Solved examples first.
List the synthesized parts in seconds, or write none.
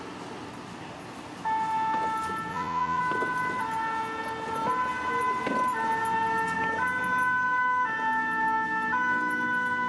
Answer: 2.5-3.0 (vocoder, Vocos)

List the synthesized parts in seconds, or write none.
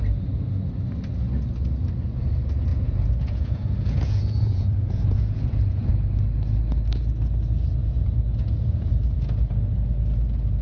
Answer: 2.7-5.9 (vocoder, Vocos); 7.8-8.9